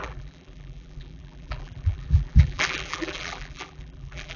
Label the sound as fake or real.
fake